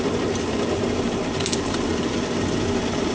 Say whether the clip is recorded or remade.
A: recorded